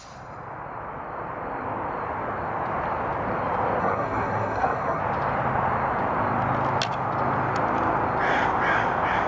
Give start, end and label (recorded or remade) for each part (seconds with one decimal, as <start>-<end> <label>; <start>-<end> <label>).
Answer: 0.0-3.8 recorded; 3.8-5.0 remade; 5.0-9.3 recorded